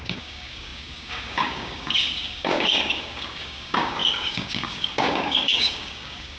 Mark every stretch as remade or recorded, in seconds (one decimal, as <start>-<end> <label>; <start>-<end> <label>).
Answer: 0.0-6.4 remade